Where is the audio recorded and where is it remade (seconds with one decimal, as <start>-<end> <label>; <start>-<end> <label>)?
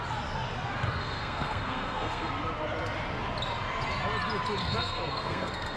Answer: 0.0-1.0 recorded; 1.0-2.3 remade; 2.3-4.6 recorded; 4.6-5.8 remade